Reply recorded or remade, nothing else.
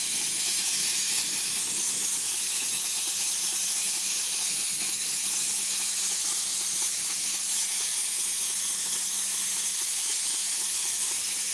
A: remade